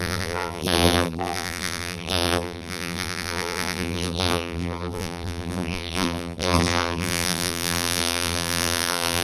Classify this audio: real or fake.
fake